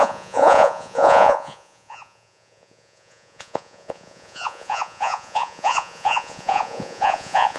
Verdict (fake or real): fake